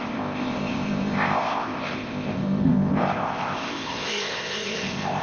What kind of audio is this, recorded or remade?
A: remade